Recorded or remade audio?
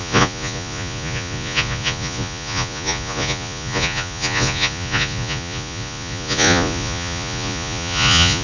remade